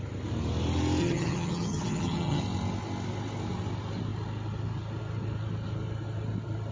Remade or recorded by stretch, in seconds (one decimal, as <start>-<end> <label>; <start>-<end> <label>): 0.0-1.0 recorded; 1.0-2.4 remade; 2.4-6.7 recorded